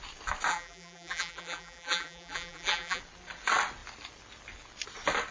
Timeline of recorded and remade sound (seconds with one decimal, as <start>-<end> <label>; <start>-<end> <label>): 0.0-0.5 recorded; 0.5-3.0 remade; 3.0-5.3 recorded